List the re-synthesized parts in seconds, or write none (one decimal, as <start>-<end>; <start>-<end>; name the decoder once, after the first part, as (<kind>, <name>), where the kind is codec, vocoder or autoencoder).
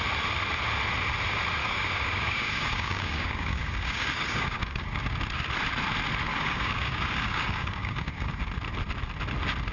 1.6-5.2 (codec, DAC); 6.3-8.5